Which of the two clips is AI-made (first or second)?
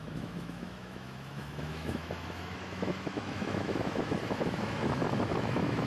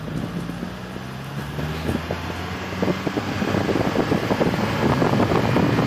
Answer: first